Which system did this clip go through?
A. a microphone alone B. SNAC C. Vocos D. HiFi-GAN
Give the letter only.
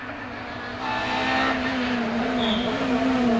A